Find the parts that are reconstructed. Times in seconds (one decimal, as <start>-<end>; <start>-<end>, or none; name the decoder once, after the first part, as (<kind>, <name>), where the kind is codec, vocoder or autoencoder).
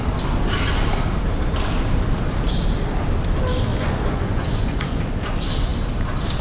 3.7-5.1 (vocoder, Vocos)